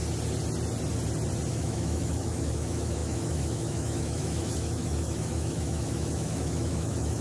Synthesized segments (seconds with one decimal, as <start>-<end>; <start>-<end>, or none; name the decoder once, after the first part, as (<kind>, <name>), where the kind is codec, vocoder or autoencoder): 1.5-7.2 (autoencoder, DAC-VAE)